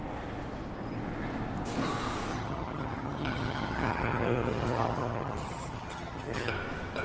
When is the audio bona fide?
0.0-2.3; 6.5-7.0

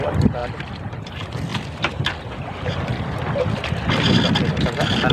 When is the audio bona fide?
0.0-5.1

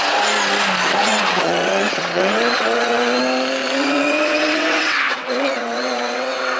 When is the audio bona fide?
0.0-1.0; 3.2-3.6